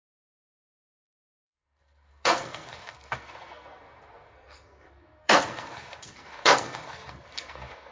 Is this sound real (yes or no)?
no